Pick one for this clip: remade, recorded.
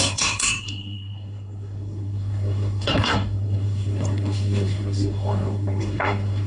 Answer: remade